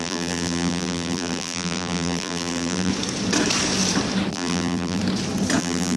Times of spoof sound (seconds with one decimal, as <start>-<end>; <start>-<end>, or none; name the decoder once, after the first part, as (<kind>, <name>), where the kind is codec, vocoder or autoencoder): 0.0-2.9 (vocoder, BigVGAN v2); 4.3-5.0; 5.6-6.0